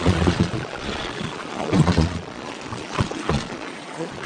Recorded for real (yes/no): no